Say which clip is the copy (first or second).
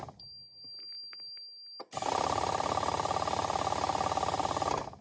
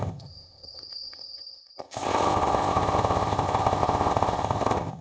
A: second